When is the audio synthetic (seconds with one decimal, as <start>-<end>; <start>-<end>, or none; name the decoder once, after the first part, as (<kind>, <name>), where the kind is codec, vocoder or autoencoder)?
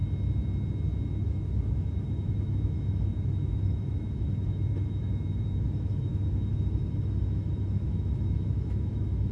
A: 1.2-9.3 (autoencoder, DAC-VAE)